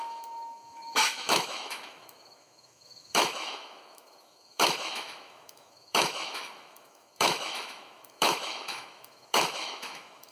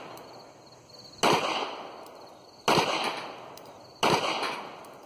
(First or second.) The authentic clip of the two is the second